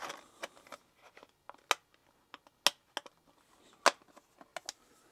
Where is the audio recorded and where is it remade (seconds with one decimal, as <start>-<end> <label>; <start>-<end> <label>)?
0.0-5.1 recorded